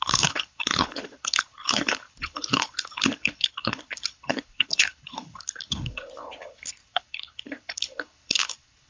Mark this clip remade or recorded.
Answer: remade